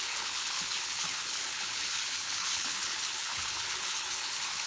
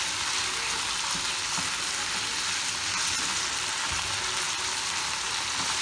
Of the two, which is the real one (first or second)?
second